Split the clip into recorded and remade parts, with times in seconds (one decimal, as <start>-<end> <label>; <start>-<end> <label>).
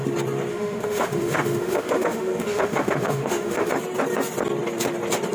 0.0-0.5 recorded; 0.5-3.7 remade; 3.7-5.3 recorded